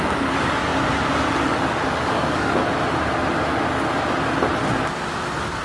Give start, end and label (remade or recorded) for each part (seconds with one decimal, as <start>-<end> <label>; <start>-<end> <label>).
0.0-0.7 remade; 0.7-1.4 recorded; 1.4-2.6 remade; 2.6-5.6 recorded